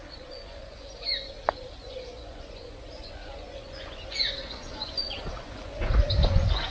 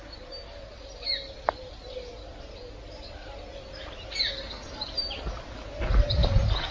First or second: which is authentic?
second